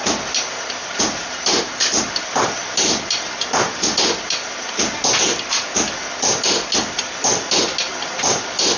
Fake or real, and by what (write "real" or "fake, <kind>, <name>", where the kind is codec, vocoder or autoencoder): real